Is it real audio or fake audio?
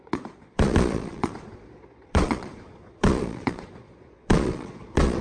fake